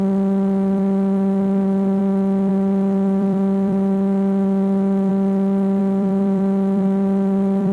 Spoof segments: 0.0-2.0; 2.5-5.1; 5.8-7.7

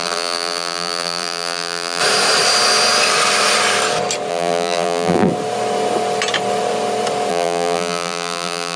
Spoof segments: 0.0-2.0; 4.3-5.3; 7.3-8.8

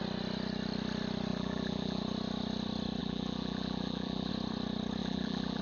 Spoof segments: 1.3-2.0; 3.0-4.3; 5.0-5.6